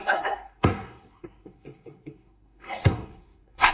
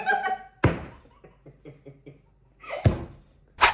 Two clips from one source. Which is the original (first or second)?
second